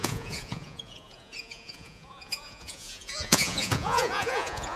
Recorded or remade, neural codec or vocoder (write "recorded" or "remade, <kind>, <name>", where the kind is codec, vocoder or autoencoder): remade, vocoder, Vocos